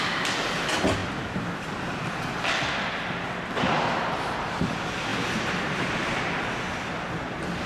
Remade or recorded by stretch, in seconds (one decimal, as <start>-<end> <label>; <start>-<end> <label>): 0.0-7.7 recorded